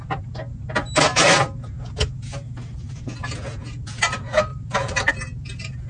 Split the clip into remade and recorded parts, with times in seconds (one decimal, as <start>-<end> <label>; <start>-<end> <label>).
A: 0.0-4.5 recorded; 4.5-5.1 remade; 5.1-5.9 recorded